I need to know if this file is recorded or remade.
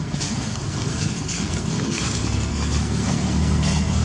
remade